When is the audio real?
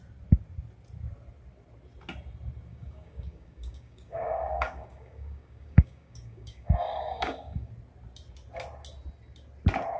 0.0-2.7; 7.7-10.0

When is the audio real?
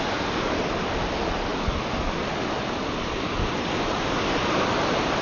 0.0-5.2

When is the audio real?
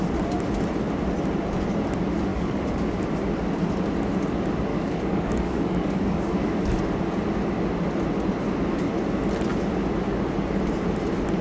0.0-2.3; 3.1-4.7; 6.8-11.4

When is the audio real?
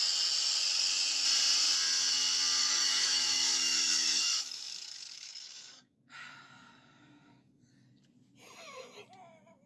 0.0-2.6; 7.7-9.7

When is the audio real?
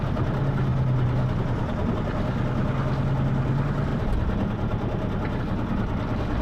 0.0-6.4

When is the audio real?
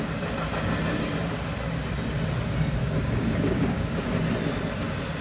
0.0-2.8; 4.2-5.2